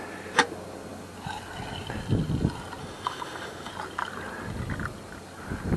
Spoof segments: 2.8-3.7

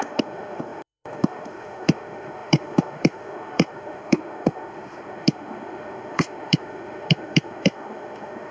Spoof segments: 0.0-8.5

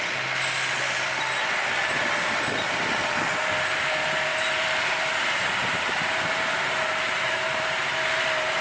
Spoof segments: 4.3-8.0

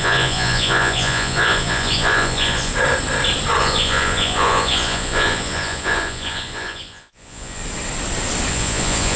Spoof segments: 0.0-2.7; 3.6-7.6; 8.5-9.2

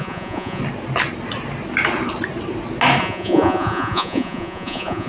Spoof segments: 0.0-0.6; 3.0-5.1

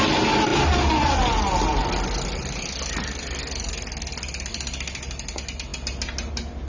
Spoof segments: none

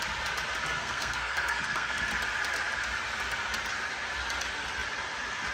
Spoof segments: 0.8-2.0